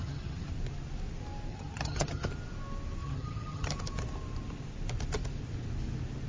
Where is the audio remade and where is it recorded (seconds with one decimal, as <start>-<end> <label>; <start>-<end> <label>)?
0.0-0.5 remade; 0.5-1.5 recorded; 1.5-2.3 remade; 2.3-3.0 recorded; 3.0-3.7 remade; 3.7-6.3 recorded